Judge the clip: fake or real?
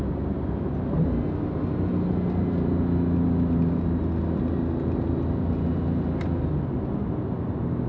real